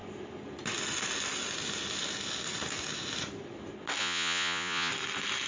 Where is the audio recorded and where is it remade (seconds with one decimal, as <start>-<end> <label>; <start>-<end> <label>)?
0.0-4.0 recorded; 4.0-4.9 remade; 4.9-5.5 recorded